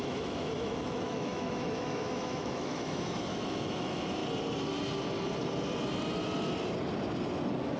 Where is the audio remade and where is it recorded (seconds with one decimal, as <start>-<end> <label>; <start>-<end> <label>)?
0.0-4.2 remade; 4.2-7.8 recorded